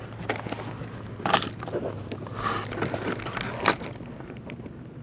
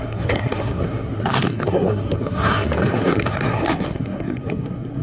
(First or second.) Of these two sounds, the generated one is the second